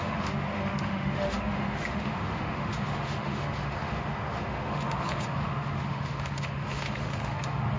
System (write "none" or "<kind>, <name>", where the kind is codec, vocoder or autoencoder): autoencoder, DAC-VAE